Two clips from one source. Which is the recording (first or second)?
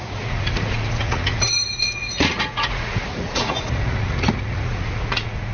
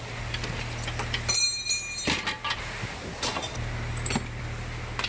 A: second